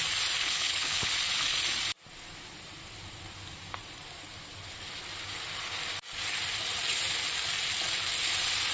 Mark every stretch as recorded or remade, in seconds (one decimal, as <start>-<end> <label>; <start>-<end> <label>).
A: 0.0-0.4 recorded; 0.4-1.1 remade; 1.1-8.7 recorded